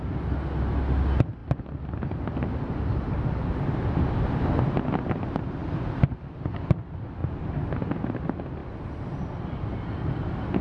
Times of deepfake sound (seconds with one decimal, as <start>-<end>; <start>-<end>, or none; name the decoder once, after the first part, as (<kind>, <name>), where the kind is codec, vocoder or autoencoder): none